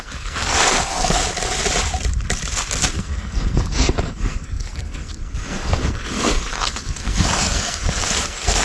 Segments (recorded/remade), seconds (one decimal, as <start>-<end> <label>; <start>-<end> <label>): 0.0-1.2 remade; 1.2-2.9 recorded; 2.9-8.6 remade